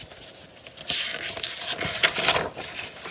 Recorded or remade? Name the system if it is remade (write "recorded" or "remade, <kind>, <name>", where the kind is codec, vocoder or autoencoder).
recorded